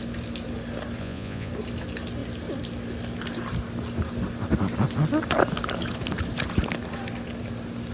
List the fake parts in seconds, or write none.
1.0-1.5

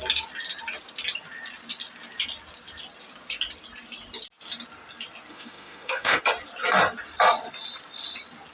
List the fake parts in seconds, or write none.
5.3-6.2